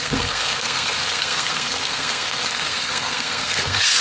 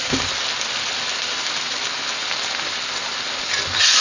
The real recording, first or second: second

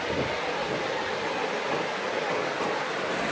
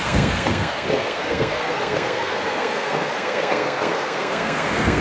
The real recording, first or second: first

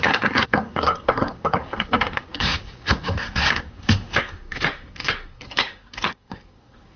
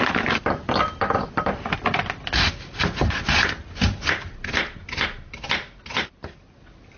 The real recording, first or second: second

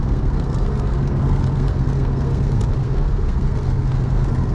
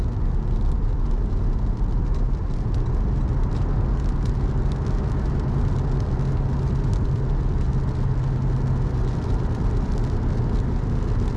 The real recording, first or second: second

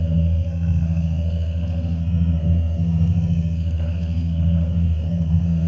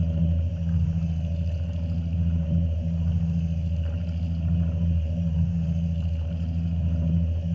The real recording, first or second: second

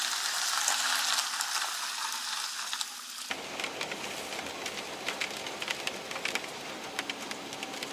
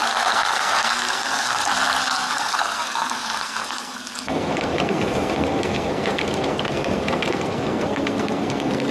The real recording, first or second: first